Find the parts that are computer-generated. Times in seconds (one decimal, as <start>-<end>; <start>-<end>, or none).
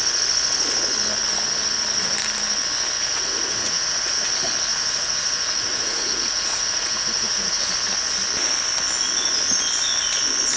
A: 3.1-4.3; 4.7-7.7